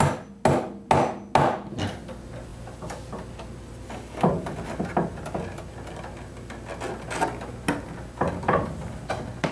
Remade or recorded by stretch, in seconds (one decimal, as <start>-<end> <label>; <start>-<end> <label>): 0.0-9.5 recorded